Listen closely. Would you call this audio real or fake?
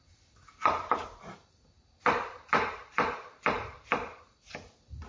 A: real